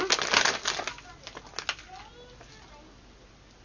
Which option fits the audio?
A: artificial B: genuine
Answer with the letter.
B